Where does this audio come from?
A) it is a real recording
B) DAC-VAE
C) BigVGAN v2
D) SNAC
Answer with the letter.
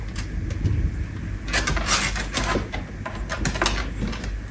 A